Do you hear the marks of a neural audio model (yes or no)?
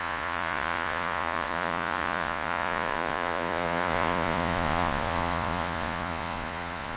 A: yes